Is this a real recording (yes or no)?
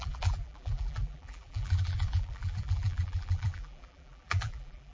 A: no